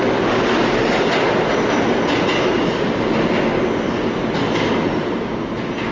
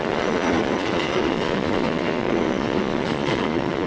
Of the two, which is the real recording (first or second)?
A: first